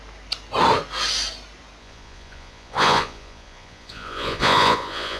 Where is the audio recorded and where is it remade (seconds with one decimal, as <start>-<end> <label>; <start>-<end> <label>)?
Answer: 0.0-1.8 recorded; 1.8-5.2 remade